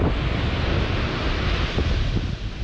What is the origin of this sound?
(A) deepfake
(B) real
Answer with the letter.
B